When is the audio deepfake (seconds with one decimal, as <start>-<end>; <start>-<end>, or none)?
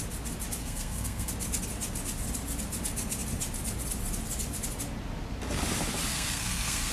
0.6-1.3; 6.1-6.9